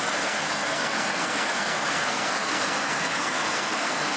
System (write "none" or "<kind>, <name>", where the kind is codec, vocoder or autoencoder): codec, SNAC